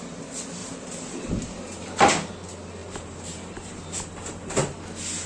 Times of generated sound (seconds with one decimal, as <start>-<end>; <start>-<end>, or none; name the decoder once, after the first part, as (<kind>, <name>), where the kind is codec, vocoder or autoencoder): 0.6-1.3 (vocoder, BigVGAN v2); 2.8-4.0

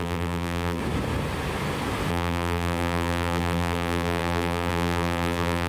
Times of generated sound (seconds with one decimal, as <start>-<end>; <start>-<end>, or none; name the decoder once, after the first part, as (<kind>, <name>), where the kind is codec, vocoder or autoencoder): 0.0-0.8 (vocoder, BigVGAN v2); 2.1-5.7

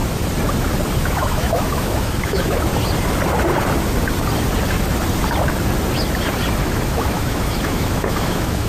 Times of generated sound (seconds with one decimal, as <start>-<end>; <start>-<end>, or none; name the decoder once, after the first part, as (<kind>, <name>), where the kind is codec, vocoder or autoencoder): 1.0-2.7 (autoencoder, DAC-VAE); 6.6-8.7

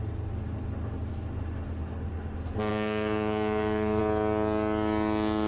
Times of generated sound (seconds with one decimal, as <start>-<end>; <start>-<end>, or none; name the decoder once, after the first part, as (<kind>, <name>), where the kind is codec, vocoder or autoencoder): 2.7-4.0 (codec, DAC)

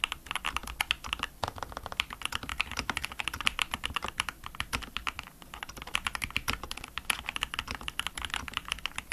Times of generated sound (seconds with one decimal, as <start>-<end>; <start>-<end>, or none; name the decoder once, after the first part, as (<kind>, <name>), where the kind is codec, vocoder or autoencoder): 2.5-3.6 (vocoder, BigVGAN v2)